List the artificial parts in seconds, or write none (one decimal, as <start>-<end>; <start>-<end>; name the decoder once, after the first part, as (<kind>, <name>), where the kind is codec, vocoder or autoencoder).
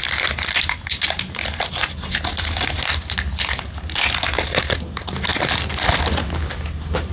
none